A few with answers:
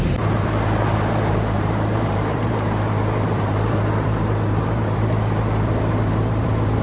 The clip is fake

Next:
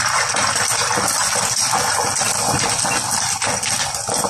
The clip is real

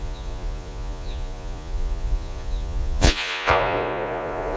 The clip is fake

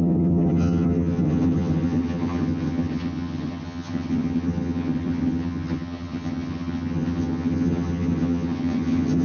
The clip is fake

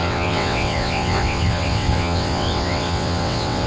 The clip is fake